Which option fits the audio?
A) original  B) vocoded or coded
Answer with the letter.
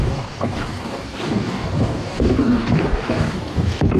B